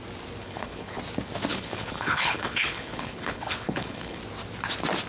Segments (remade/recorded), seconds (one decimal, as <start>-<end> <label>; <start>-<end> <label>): 0.0-0.4 recorded; 0.4-1.0 remade; 1.0-1.5 recorded; 1.5-4.2 remade; 4.2-5.1 recorded